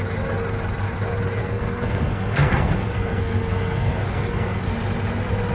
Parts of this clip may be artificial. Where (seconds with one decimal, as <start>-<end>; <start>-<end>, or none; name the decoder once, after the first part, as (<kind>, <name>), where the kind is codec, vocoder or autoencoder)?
1.4-4.7 (codec, SNAC)